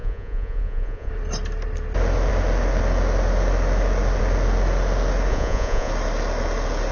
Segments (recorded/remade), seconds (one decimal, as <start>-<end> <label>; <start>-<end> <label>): 0.0-1.1 remade; 1.1-5.3 recorded; 5.3-5.9 remade; 5.9-6.9 recorded